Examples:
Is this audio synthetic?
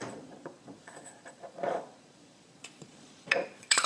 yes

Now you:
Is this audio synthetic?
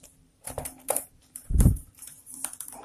yes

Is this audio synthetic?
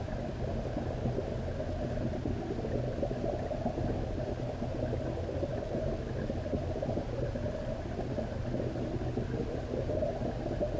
no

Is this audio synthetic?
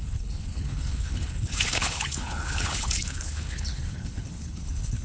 yes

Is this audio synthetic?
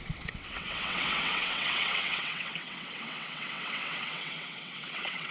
yes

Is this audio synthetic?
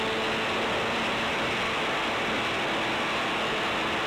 no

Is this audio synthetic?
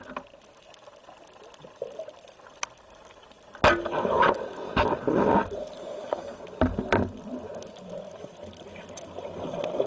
no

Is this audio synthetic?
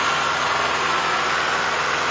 no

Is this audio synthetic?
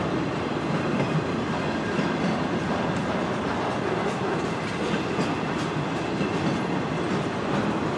no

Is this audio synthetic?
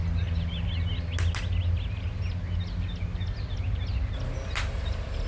no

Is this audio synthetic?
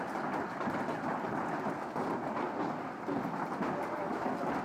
no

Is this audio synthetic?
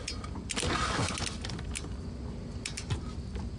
no